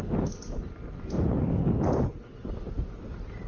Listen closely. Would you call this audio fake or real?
real